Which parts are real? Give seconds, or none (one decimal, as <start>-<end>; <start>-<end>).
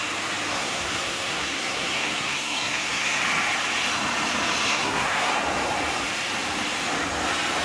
0.0-0.5; 3.2-4.7; 5.3-7.6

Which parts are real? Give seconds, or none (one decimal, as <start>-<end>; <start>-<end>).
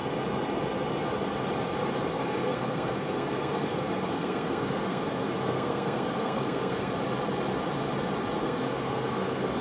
0.0-2.1; 6.9-8.4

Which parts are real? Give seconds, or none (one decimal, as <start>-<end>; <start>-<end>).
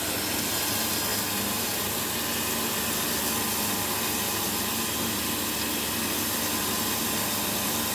0.0-7.9